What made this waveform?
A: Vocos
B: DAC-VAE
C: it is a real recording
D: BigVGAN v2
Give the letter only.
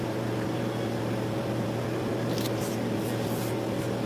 C